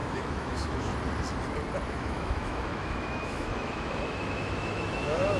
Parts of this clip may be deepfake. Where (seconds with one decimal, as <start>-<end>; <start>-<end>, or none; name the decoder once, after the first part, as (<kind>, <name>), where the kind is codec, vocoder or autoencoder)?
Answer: 0.0-0.9 (autoencoder, DAC-VAE); 1.9-5.4